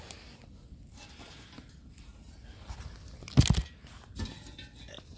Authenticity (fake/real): real